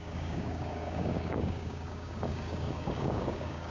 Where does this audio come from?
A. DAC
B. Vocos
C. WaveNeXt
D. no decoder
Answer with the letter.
A